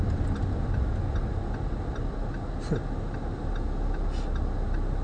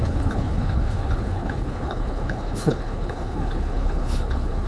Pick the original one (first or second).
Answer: first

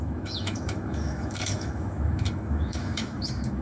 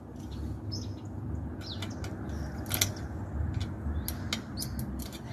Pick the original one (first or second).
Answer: second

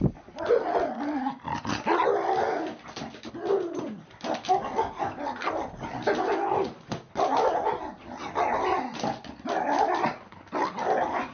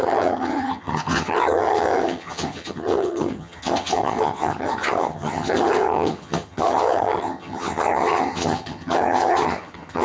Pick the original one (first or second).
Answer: first